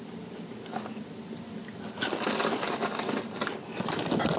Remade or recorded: recorded